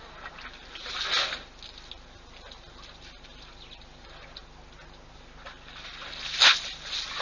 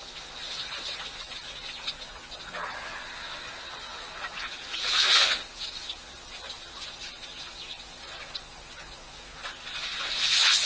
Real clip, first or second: first